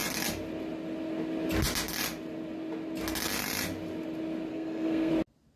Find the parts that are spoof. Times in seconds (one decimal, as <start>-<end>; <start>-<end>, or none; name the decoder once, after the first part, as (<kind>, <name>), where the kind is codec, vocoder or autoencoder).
4.5-5.1 (codec, SNAC)